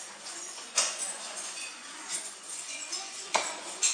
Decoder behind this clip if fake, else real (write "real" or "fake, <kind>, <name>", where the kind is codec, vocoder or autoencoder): fake, vocoder, Vocos